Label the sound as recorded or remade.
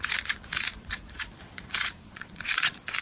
remade